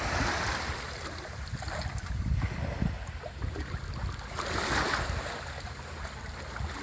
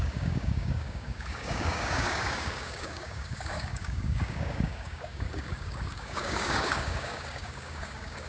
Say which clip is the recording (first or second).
first